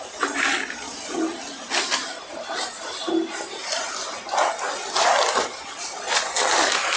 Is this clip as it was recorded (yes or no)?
yes